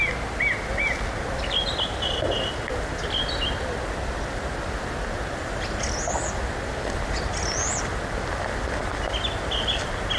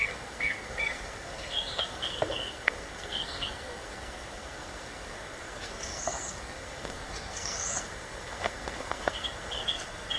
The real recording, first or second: first